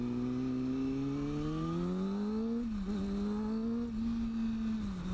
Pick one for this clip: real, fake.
real